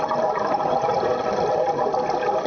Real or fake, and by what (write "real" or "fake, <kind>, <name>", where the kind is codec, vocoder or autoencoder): real